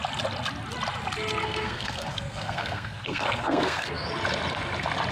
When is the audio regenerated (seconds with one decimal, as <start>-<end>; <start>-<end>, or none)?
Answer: 1.4-4.1